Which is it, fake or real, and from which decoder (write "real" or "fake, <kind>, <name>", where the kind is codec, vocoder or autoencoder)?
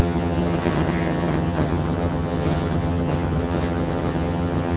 fake, vocoder, HiFi-GAN